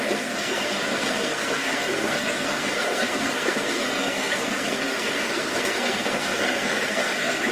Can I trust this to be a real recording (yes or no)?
no